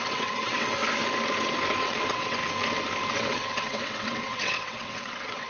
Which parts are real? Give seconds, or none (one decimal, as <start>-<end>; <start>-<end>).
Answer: 0.8-1.8; 2.4-3.1